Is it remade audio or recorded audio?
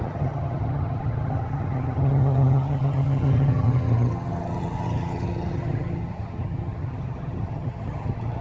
remade